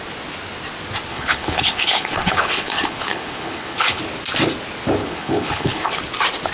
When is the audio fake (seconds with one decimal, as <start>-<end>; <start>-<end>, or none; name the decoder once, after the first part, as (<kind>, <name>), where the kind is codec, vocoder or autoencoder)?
1.1-4.0 (codec, HILCodec); 5.0-6.0